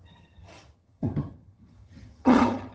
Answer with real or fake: fake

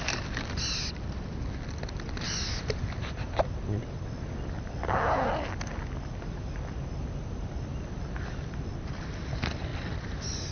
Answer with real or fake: real